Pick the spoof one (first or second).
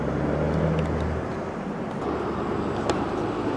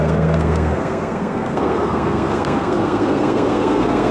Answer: second